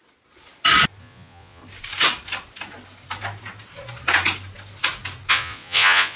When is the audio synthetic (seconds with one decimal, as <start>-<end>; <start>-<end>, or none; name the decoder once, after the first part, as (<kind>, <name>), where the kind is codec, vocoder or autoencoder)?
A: 1.0-1.6 (vocoder, Vocos); 5.3-6.2